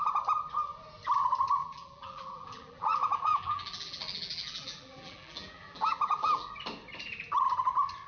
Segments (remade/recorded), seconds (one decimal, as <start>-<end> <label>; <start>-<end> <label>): 0.0-1.6 recorded; 1.6-6.5 remade; 6.5-8.1 recorded